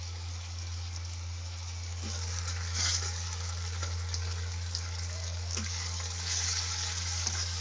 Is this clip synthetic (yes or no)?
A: yes